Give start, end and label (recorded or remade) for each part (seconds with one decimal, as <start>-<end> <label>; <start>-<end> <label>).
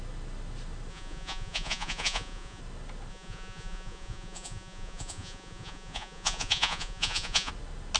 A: 0.0-0.9 recorded; 0.9-2.6 remade; 2.6-3.1 recorded; 3.1-7.5 remade; 7.5-8.0 recorded